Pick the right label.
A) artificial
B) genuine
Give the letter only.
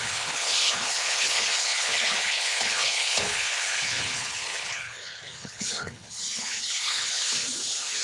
A